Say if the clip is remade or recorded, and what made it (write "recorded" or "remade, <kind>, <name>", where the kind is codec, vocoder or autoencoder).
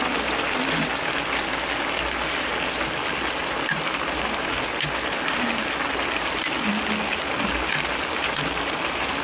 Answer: recorded